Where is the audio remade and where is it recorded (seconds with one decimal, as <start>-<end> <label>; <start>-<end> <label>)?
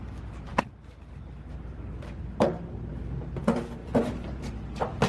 0.0-3.8 recorded; 3.8-4.4 remade; 4.4-5.1 recorded